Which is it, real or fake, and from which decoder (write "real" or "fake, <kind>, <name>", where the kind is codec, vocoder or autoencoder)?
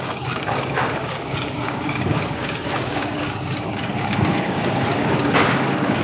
fake, codec, DAC